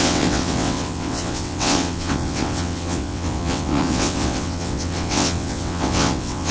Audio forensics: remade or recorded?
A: remade